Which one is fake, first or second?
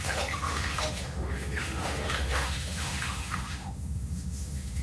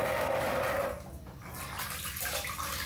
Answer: first